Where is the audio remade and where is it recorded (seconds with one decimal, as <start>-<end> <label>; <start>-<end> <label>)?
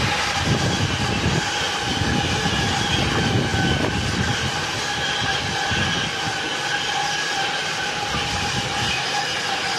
0.0-9.8 recorded